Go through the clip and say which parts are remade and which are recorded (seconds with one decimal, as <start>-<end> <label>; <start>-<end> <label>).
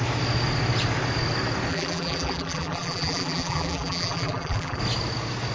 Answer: 0.0-1.7 recorded; 1.7-4.8 remade; 4.8-5.5 recorded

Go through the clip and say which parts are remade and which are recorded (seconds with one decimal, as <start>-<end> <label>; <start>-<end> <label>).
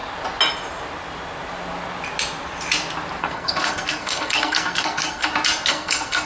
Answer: 0.0-3.2 recorded; 3.2-5.3 remade; 5.3-5.7 recorded; 5.7-6.3 remade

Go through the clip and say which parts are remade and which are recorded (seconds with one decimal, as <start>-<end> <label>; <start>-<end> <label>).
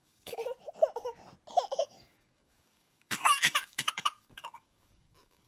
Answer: 0.0-0.4 remade; 0.4-1.8 recorded; 1.8-5.5 remade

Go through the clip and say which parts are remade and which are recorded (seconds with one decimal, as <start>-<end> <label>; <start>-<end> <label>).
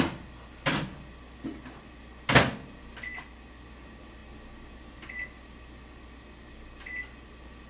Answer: 0.0-7.7 recorded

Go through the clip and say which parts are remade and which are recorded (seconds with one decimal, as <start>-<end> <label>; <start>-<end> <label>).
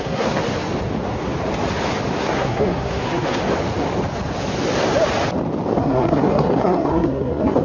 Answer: 0.0-0.4 remade; 0.4-2.2 recorded; 2.2-3.4 remade; 3.4-5.7 recorded; 5.7-7.6 remade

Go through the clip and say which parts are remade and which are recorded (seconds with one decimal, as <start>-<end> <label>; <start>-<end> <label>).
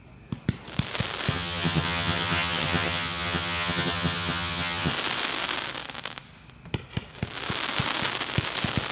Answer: 0.0-1.3 recorded; 1.3-4.9 remade; 4.9-8.9 recorded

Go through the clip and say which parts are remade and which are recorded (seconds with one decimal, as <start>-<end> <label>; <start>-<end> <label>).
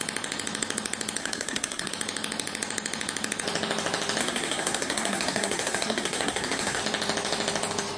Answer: 0.0-1.2 recorded; 1.2-1.9 remade; 1.9-4.2 recorded; 4.2-6.8 remade; 6.8-8.0 recorded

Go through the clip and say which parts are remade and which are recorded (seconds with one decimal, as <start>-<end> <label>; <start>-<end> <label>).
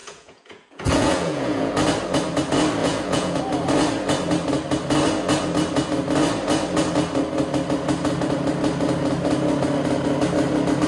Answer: 0.0-1.7 remade; 1.7-2.8 recorded; 2.8-3.4 remade; 3.4-10.9 recorded